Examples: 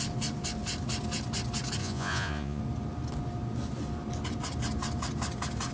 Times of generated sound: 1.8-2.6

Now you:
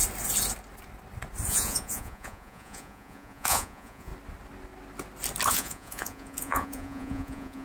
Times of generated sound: 1.5-4.1; 5.5-7.6

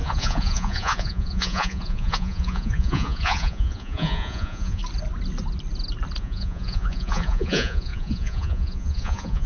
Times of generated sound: 0.0-4.8; 6.2-9.5

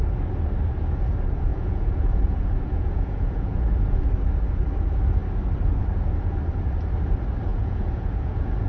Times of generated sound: 1.5-4.0; 7.5-8.7